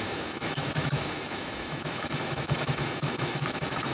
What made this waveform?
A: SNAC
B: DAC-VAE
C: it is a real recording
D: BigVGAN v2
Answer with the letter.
B